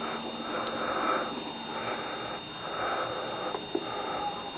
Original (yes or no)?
yes